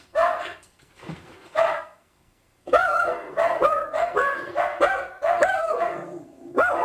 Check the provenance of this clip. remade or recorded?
remade